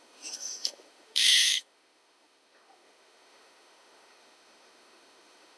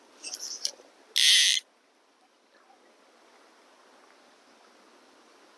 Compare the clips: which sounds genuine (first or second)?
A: second